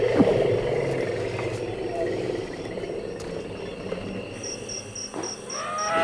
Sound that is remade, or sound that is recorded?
recorded